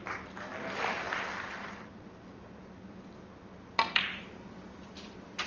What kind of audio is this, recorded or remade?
recorded